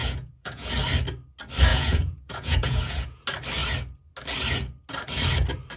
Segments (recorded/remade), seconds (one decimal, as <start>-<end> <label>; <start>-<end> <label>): 0.0-0.7 remade; 0.7-1.7 recorded; 1.7-3.2 remade; 3.2-5.8 recorded